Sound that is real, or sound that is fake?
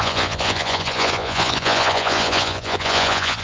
fake